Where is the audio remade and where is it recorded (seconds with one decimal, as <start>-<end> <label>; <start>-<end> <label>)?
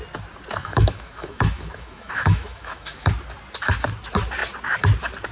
0.0-0.6 recorded; 0.6-3.1 remade; 3.1-5.3 recorded